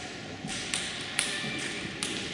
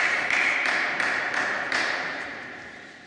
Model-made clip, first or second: second